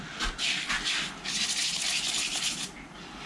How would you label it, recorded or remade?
recorded